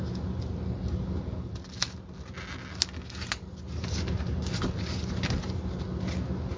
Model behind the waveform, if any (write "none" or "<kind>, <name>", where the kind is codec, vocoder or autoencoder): none